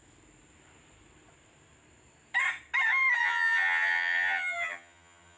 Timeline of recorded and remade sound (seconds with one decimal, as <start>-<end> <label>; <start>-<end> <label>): 0.0-3.2 recorded; 3.2-5.4 remade